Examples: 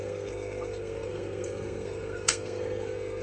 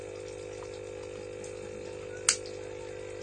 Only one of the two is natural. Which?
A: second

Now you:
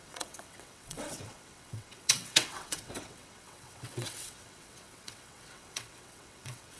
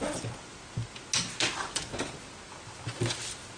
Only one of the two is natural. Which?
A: second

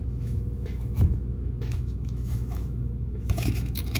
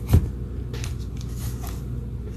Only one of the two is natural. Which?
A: second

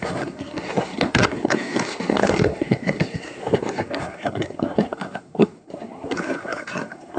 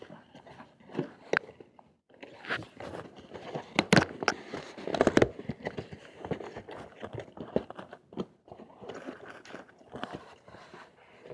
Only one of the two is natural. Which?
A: second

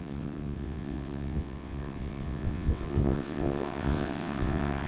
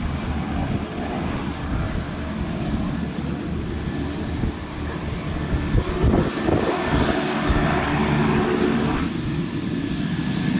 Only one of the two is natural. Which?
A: second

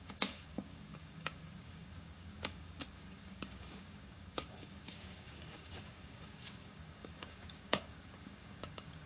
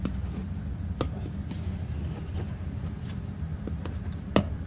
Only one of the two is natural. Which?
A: second